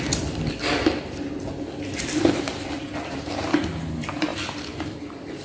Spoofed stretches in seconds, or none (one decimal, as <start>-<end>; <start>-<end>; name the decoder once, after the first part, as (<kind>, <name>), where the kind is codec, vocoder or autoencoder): 4.3-5.0 (vocoder, BigVGAN v2)